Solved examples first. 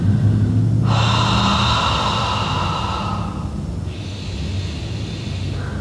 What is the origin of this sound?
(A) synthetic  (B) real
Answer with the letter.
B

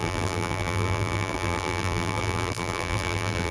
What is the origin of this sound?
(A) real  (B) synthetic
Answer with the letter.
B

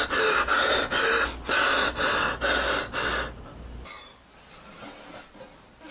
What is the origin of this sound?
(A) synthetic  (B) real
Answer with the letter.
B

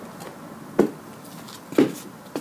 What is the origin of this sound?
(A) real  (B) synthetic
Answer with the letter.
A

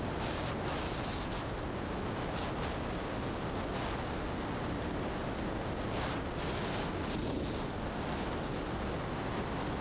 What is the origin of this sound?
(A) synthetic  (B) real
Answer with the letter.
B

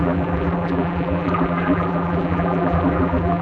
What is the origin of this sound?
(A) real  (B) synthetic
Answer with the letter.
B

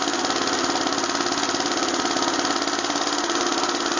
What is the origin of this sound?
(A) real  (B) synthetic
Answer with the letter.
A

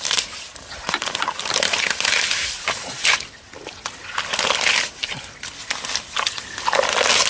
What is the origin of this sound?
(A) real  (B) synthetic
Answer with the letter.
A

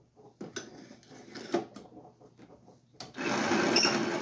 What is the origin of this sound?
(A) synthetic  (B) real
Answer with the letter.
B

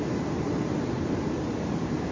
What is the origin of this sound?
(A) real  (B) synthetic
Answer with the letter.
B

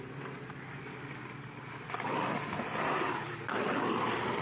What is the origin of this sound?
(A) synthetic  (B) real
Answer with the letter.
B